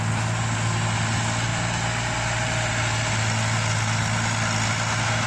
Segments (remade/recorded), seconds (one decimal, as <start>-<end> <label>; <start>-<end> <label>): 0.0-5.3 recorded